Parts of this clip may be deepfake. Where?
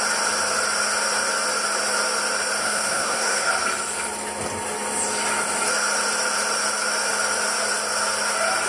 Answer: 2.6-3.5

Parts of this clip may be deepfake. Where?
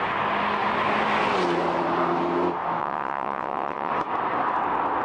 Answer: 2.8-3.9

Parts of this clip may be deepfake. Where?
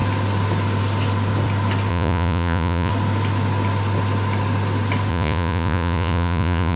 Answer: 1.9-2.9; 5.1-6.8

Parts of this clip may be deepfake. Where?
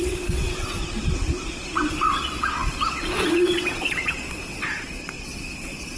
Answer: 0.0-0.8; 1.9-6.0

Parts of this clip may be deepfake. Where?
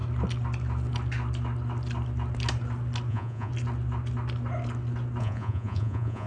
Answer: 3.1-3.5; 5.2-6.3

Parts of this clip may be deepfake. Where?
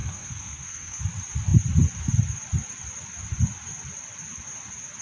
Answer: 0.0-1.0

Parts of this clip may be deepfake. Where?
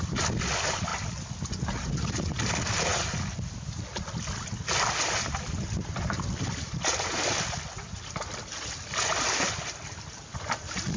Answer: none